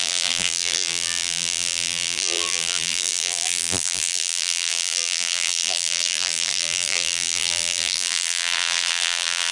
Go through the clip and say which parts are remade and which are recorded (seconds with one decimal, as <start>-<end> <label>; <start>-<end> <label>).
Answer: 0.0-9.5 remade